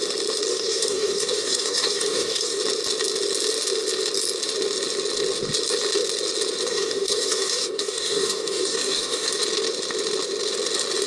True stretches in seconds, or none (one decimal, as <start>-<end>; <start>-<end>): 0.0-0.5; 2.6-6.7; 9.4-11.1